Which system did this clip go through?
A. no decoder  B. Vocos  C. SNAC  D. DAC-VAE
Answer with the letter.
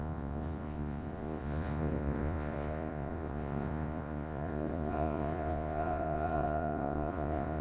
B